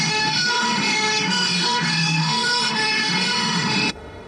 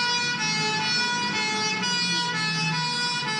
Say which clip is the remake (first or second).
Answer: first